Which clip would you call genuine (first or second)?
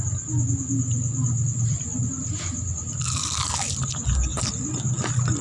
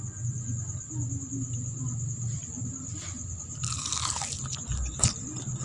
first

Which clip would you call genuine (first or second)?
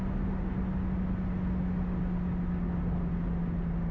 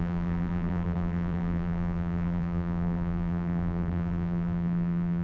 first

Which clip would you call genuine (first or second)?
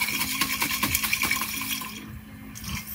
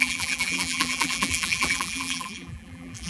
first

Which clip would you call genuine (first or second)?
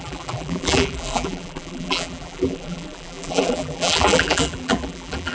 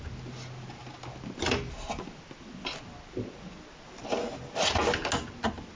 second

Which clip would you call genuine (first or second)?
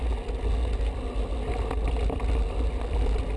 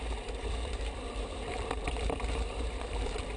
first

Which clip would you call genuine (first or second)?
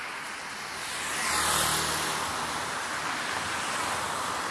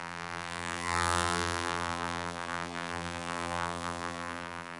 first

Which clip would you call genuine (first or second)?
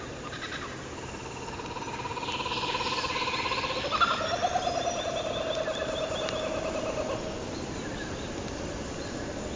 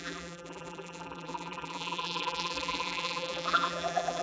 first